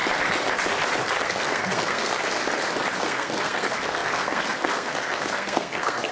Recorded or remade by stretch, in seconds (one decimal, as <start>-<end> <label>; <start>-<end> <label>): 0.0-1.2 recorded; 1.2-2.4 remade; 2.4-3.0 recorded; 3.0-6.1 remade